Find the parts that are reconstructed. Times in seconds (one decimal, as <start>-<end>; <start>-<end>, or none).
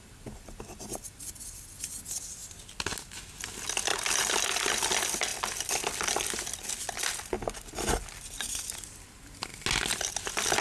none